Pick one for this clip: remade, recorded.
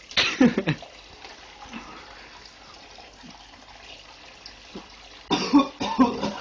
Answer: recorded